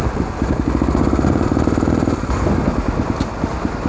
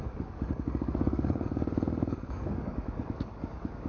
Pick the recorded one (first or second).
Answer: first